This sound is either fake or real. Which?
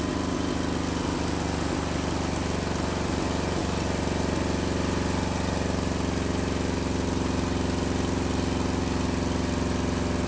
real